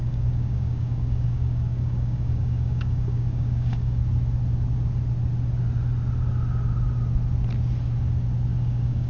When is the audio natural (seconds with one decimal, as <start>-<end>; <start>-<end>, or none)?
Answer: 4.0-8.6